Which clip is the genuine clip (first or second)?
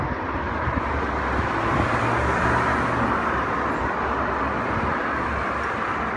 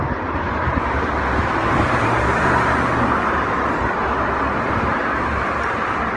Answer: first